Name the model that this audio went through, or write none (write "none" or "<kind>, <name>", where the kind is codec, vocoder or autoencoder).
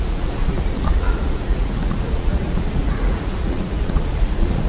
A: vocoder, Vocos